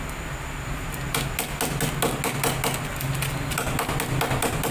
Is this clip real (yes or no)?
yes